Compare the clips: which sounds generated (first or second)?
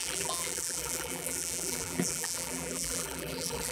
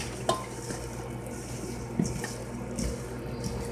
first